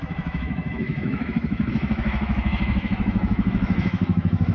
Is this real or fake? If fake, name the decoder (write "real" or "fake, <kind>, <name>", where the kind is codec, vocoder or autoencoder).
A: fake, autoencoder, DAC-VAE